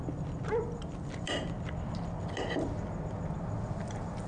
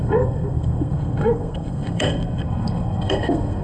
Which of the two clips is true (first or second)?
first